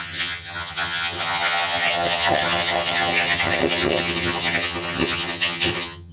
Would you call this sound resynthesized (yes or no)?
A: yes